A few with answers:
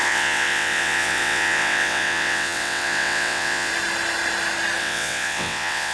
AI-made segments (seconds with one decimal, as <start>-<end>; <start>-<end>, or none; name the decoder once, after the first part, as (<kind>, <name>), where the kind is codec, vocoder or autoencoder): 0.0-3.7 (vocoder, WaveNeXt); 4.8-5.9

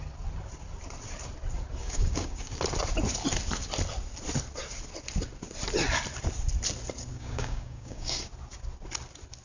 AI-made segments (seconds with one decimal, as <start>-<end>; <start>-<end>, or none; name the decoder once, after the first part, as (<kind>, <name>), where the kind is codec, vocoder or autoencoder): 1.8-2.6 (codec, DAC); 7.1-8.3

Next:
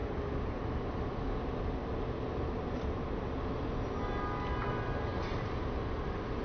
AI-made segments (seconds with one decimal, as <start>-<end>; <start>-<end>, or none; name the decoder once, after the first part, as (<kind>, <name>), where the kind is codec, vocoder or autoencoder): none